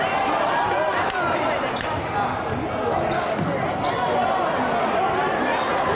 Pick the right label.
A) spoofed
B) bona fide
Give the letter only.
B